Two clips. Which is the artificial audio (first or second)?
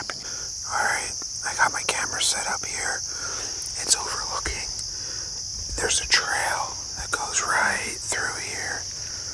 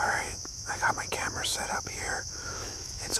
second